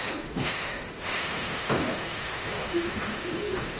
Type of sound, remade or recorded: remade